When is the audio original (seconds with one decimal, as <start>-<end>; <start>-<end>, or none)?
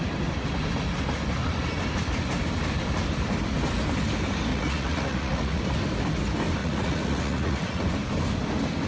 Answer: 0.0-4.5; 5.6-6.6; 7.8-8.9